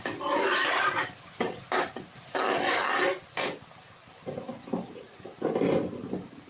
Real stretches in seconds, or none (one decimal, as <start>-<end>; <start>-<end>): 0.0-6.5